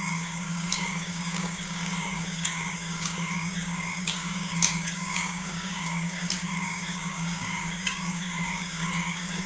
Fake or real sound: fake